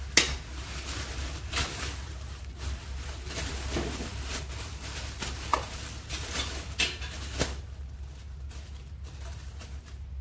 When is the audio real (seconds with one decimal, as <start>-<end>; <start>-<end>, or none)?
0.0-10.2